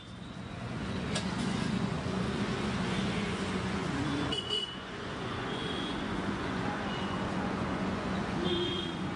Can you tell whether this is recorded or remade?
remade